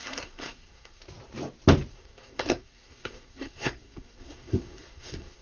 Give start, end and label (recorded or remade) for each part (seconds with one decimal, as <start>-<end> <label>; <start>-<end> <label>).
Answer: 0.0-1.0 remade; 1.0-1.9 recorded; 1.9-5.4 remade